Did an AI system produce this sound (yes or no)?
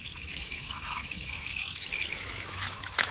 yes